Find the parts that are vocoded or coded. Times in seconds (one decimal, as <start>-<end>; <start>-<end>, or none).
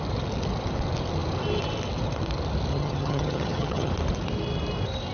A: 2.7-3.9